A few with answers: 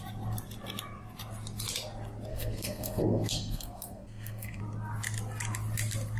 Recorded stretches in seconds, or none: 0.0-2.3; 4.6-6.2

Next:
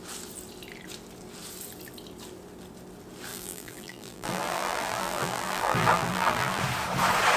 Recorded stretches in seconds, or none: 0.0-3.3; 6.6-7.4

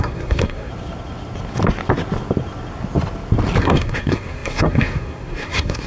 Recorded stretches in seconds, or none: 0.7-3.6

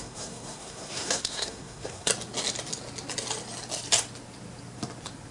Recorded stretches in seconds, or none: 2.1-5.3